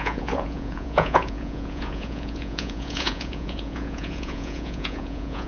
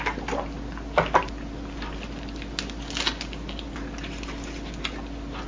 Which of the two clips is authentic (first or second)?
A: second